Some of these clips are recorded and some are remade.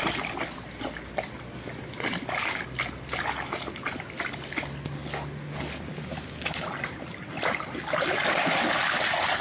recorded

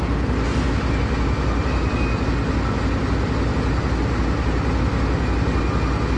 recorded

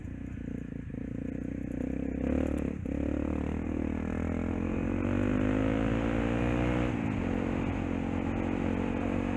recorded